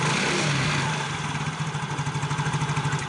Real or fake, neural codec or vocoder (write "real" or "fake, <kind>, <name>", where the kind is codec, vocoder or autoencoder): real